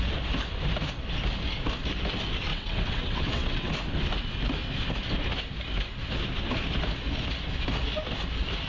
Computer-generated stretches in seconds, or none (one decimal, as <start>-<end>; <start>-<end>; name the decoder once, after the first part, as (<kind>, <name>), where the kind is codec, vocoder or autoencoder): 2.5-3.7 (vocoder, WaveNeXt)